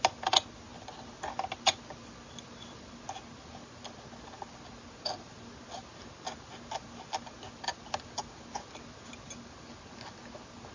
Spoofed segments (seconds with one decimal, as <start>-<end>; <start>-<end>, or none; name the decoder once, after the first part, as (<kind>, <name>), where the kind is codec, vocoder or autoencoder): none